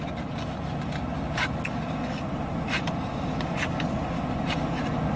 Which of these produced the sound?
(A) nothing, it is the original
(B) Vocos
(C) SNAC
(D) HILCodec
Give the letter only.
A